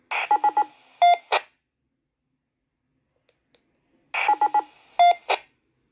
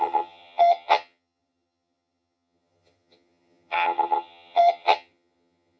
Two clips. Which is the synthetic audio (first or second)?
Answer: second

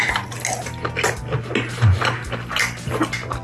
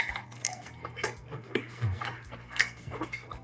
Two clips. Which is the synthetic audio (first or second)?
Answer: second